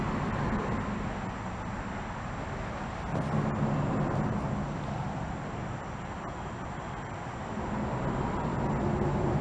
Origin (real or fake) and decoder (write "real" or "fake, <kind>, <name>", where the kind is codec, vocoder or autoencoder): real